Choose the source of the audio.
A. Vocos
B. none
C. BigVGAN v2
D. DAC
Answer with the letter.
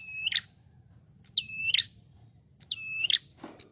B